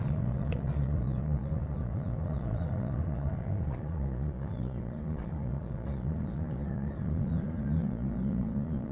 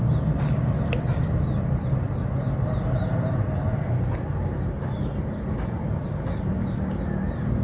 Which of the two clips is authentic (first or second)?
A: second